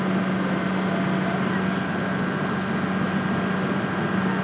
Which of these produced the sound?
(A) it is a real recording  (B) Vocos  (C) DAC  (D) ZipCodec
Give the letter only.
A